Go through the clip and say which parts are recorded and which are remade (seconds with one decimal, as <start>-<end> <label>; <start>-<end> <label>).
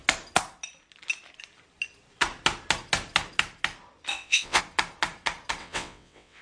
0.0-4.1 recorded; 4.1-4.6 remade; 4.6-5.6 recorded; 5.6-6.4 remade